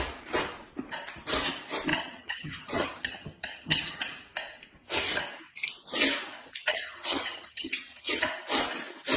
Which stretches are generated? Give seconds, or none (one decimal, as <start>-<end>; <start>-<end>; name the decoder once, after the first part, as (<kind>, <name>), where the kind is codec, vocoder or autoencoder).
1.9-4.0 (vocoder, HiFi-GAN); 6.7-8.3